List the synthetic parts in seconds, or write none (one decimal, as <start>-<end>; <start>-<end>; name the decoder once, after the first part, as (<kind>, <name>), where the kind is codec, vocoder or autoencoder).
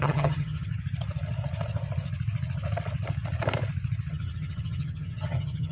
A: 0.0-0.7 (vocoder, HiFi-GAN); 4.1-5.7